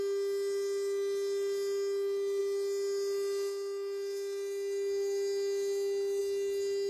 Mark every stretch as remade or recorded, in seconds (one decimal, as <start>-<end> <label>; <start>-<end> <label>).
0.0-6.9 recorded